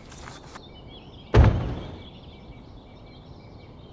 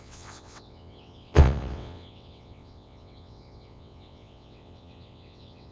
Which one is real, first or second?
first